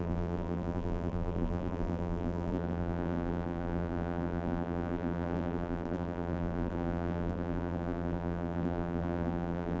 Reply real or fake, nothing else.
fake